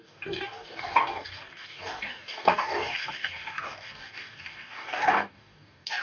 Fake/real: fake